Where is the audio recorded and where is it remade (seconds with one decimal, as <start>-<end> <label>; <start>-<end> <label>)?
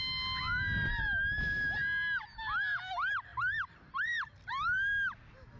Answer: 0.0-5.6 recorded